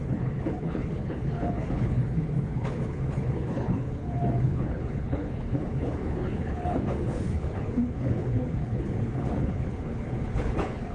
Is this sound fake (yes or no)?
yes